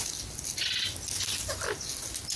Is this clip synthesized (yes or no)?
no